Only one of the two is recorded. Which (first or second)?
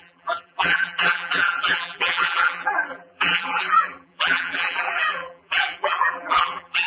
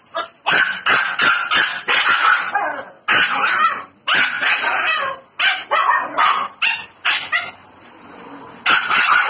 second